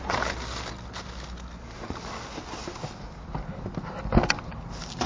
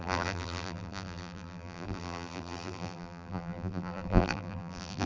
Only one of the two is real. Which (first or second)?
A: first